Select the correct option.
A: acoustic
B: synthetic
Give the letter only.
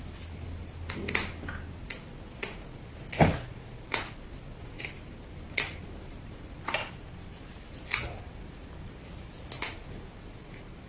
A